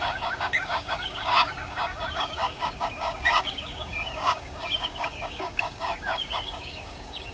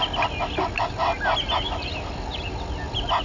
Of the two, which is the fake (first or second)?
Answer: first